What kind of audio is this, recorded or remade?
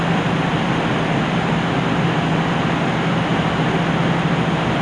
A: recorded